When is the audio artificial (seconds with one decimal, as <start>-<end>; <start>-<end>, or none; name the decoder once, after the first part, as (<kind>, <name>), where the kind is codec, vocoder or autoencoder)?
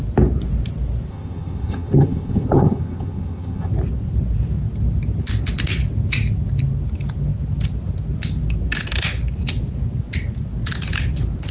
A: 1.1-3.7 (vocoder, HiFi-GAN)